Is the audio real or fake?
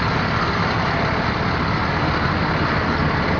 real